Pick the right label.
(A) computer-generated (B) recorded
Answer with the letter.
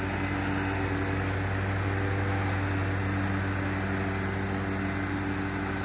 B